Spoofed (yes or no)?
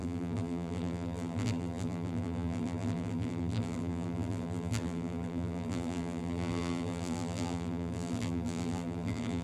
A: yes